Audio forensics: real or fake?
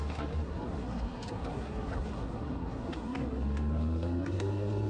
fake